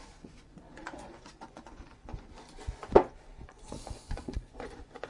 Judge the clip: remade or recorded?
remade